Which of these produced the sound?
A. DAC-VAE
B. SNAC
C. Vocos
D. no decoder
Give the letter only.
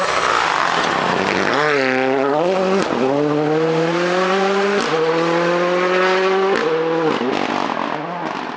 D